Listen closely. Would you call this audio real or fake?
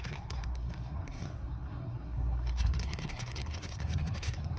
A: fake